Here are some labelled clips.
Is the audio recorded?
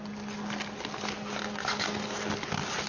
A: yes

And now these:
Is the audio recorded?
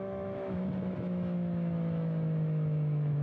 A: no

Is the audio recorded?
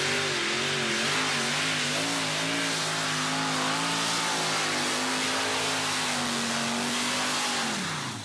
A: yes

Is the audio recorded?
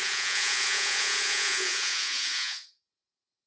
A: no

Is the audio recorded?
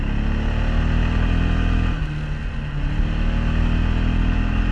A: yes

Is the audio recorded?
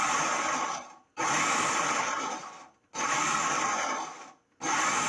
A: yes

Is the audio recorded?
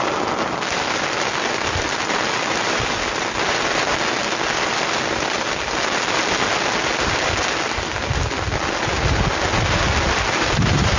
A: yes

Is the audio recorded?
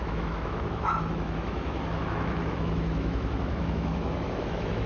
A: no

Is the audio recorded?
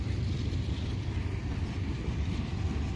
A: no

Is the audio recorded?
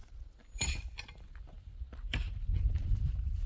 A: no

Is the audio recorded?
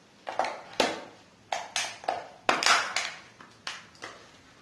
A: yes